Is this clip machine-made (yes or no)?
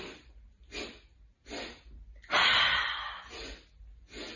no